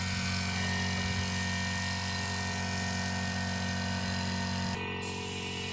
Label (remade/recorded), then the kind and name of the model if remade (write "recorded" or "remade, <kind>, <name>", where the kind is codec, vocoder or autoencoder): recorded